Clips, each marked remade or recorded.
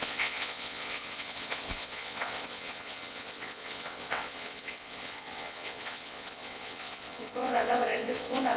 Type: remade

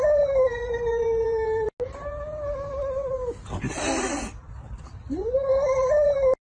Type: recorded